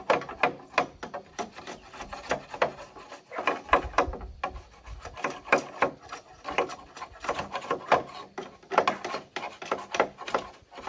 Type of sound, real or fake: real